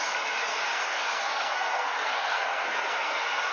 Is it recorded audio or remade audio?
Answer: remade